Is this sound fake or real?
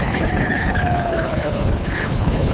fake